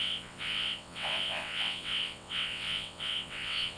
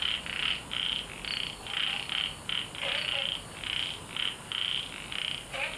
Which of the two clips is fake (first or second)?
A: first